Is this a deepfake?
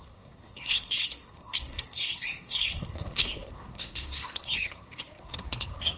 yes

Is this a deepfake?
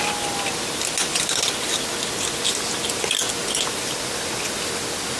no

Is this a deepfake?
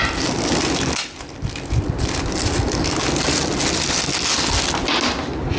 no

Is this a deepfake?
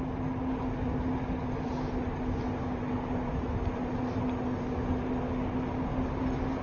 no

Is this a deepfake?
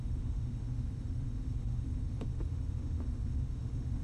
yes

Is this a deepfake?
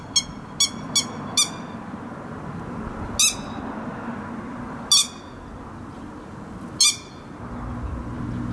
no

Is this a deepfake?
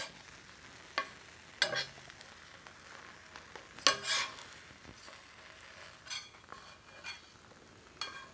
no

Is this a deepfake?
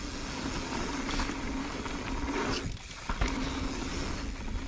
no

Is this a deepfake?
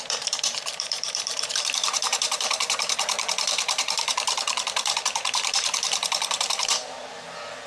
yes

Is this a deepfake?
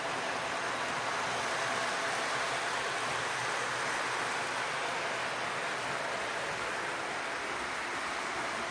no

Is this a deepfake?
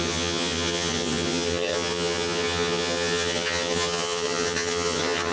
yes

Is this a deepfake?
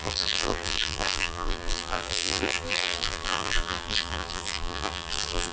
yes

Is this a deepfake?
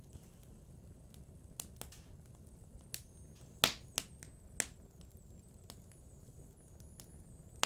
no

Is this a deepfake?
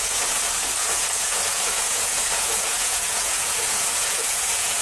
yes